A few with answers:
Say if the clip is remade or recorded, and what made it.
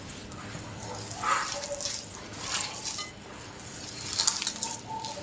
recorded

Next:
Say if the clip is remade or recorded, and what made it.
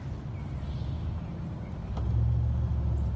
recorded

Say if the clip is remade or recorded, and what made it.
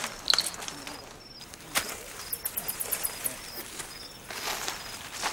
recorded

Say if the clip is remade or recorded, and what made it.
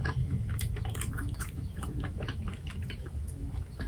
remade, autoencoder, DAC-VAE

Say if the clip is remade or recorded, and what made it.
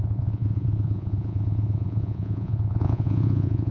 remade, vocoder, Vocos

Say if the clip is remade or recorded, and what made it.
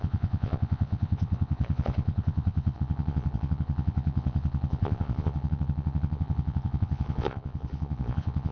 remade, vocoder, Vocos